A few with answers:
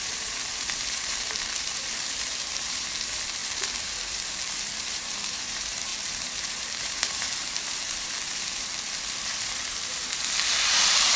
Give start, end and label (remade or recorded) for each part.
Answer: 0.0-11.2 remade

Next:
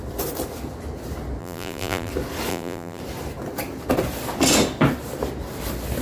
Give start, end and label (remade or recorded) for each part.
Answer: 0.0-1.4 recorded; 1.4-2.1 remade; 2.1-2.5 recorded; 2.5-3.0 remade; 3.0-6.0 recorded